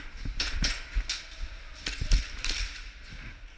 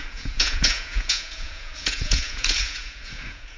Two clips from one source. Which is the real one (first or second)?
first